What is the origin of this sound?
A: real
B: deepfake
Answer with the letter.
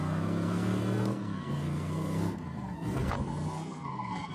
B